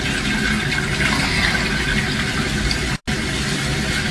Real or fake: real